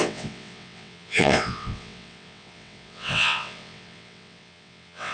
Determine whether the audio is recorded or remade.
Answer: remade